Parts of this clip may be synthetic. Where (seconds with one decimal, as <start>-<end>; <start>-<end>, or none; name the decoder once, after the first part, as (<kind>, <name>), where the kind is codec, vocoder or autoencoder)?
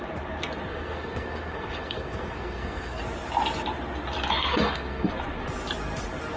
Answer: 0.7-3.0 (codec, SNAC); 4.5-5.1